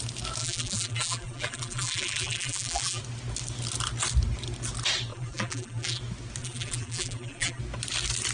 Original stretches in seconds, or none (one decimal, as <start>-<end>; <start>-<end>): 0.0-0.4; 3.0-5.1; 6.0-6.4; 7.6-8.3